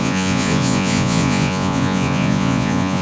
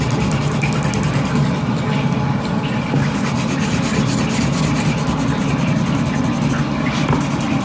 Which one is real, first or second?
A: second